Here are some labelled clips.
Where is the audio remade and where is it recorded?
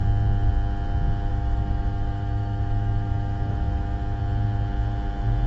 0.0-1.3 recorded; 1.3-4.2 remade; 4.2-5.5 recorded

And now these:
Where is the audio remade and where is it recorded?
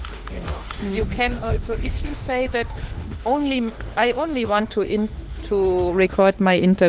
0.0-5.4 remade; 5.4-6.1 recorded; 6.1-6.9 remade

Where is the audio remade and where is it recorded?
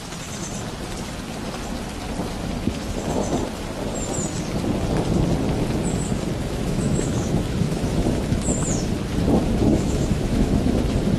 0.0-6.4 recorded; 6.4-8.5 remade; 8.5-9.7 recorded; 9.7-10.6 remade; 10.6-11.2 recorded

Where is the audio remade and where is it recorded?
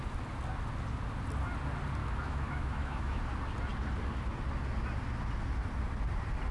0.0-2.0 recorded; 2.0-3.2 remade; 3.2-6.5 recorded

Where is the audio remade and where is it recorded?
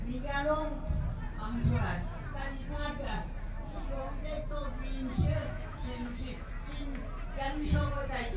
0.0-5.4 recorded; 5.4-6.5 remade; 6.5-8.4 recorded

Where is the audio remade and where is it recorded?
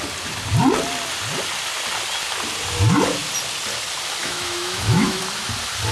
0.0-4.2 recorded; 4.2-5.2 remade; 5.2-5.9 recorded